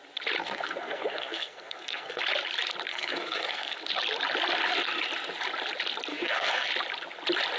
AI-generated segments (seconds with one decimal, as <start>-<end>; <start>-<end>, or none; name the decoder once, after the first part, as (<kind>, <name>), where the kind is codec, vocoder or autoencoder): 0.4-2.2 (codec, SNAC); 2.9-3.8; 6.1-6.7